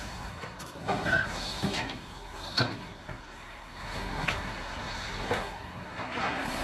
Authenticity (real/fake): fake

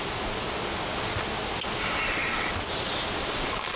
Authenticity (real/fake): real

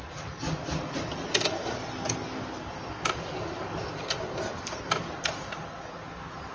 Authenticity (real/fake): real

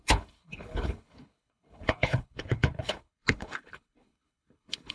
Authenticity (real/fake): fake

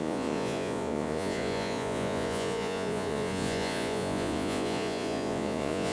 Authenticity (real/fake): fake